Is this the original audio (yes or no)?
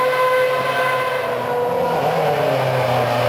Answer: yes